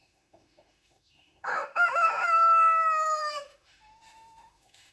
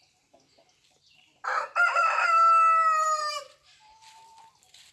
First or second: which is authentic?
second